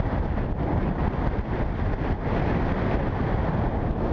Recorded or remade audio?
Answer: recorded